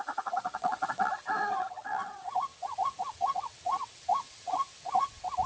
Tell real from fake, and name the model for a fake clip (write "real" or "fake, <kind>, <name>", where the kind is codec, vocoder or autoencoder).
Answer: fake, vocoder, WaveNeXt